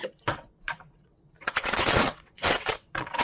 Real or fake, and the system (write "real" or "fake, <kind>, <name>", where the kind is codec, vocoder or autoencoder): fake, vocoder, WaveNeXt